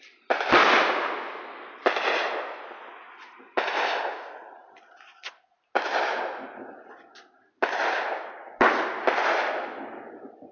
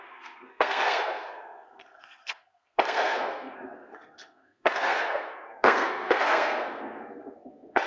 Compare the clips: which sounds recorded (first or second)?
first